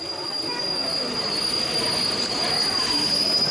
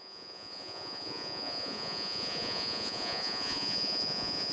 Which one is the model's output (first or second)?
second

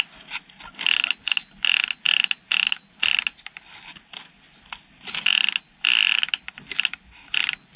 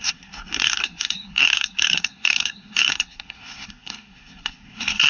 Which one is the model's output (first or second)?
second